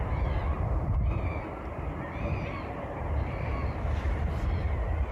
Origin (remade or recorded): remade